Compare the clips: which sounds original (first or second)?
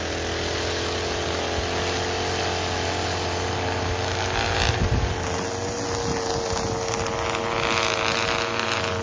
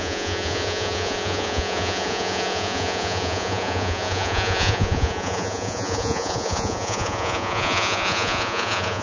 first